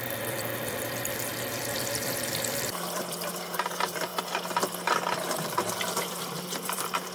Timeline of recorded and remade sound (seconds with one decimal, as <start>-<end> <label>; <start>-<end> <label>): 0.0-1.3 remade; 1.3-2.1 recorded; 2.1-4.1 remade; 4.1-6.1 recorded; 6.1-7.1 remade